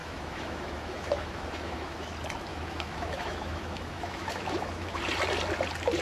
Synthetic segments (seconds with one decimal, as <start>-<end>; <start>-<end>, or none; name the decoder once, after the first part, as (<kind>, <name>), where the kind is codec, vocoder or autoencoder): 0.0-2.1 (autoencoder, DAC-VAE); 2.5-5.0